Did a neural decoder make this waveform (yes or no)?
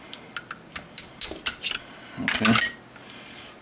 no